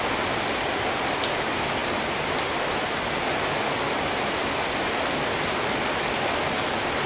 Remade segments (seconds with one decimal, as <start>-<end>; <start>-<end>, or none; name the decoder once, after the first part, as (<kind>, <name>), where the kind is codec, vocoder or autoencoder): none